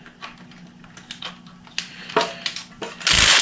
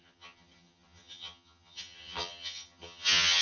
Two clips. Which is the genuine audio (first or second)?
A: first